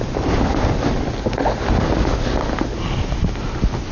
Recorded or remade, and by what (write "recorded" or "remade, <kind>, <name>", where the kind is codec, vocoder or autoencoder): recorded